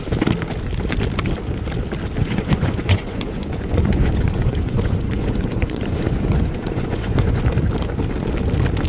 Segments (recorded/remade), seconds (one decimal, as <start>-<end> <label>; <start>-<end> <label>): 0.0-2.2 recorded; 2.2-7.4 remade; 7.4-8.9 recorded